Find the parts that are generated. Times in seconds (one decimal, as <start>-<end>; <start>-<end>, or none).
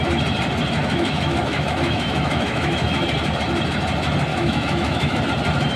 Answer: 0.8-3.0; 4.3-5.2